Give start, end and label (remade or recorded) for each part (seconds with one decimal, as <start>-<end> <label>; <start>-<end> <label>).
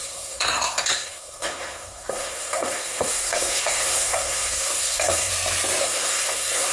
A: 0.0-5.3 remade; 5.3-5.8 recorded; 5.8-6.7 remade